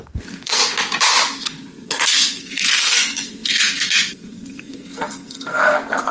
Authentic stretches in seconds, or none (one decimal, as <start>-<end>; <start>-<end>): 0.6-1.7